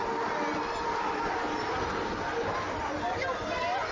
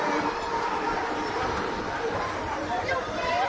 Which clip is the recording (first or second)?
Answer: first